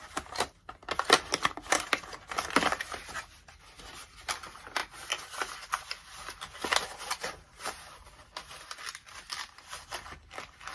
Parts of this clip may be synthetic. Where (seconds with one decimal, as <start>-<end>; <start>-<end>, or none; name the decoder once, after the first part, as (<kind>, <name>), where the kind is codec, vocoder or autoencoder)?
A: 7.2-8.0 (vocoder, BigVGAN v2)